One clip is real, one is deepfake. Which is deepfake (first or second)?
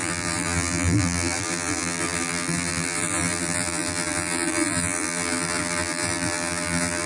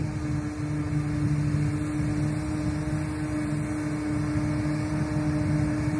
first